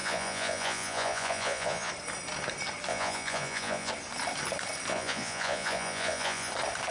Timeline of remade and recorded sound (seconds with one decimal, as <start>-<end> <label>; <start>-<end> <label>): 0.0-1.9 remade; 1.9-2.9 recorded; 2.9-3.9 remade; 3.9-4.9 recorded; 4.9-6.5 remade; 6.5-6.9 recorded